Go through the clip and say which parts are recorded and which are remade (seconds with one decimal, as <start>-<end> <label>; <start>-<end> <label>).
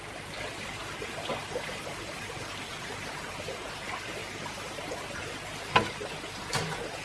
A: 0.0-1.4 recorded; 1.4-3.7 remade; 3.7-4.2 recorded; 4.2-5.1 remade; 5.1-7.0 recorded